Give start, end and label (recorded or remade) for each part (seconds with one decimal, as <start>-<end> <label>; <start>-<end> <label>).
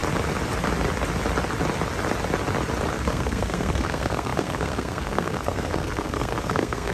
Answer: 0.0-2.9 recorded; 2.9-6.9 remade